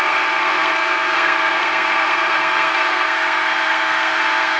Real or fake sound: fake